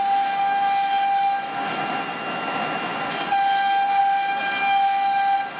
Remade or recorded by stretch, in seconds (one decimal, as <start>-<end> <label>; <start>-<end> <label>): 0.0-5.6 recorded